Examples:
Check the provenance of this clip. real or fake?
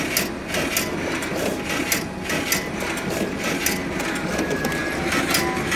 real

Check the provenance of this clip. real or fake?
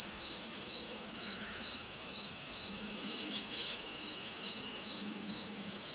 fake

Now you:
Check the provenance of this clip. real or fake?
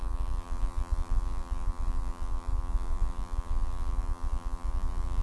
fake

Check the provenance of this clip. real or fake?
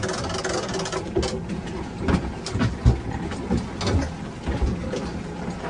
real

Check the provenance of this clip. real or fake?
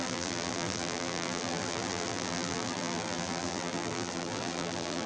fake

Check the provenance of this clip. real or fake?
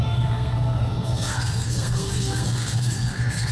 fake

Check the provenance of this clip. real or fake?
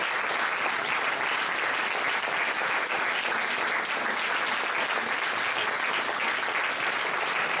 real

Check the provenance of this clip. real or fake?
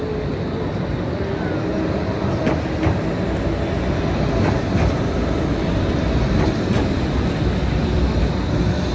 real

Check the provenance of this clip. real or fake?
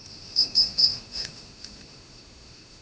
fake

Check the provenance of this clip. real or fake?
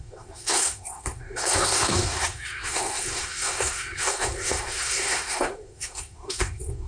fake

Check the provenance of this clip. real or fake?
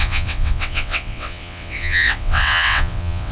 fake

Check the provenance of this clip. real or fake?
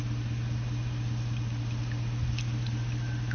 real